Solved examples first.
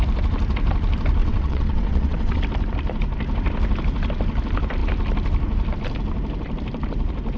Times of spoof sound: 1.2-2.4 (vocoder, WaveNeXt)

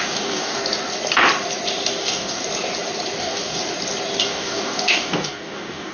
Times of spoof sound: 0.0-0.6 (codec, DAC); 2.0-2.4; 3.2-3.6; 4.2-5.9

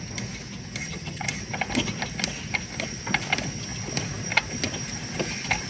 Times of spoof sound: 0.8-1.4 (vocoder, HiFi-GAN)

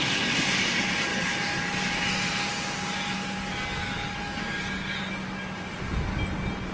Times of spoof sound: 1.1-1.9 (codec, DAC); 3.8-5.0

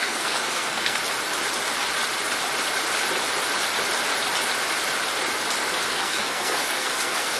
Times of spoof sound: 0.0-1.0 (codec, SNAC); 5.9-7.4

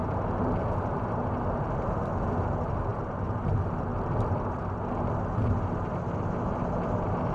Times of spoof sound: 3.9-4.6 (vocoder, BigVGAN v2)

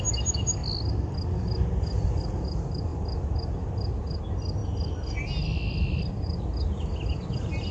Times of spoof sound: none

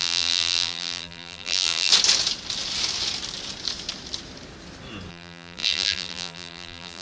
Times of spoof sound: 0.0-1.9 (vocoder, BigVGAN v2); 5.1-7.0